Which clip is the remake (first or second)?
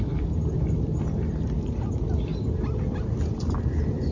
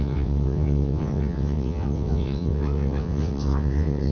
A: second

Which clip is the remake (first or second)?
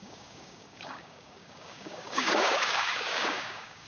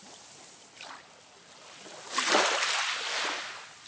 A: first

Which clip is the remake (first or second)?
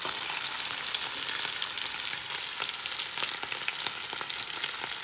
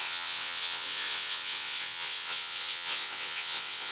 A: second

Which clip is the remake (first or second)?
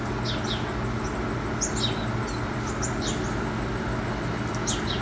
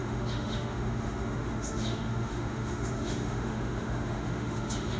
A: second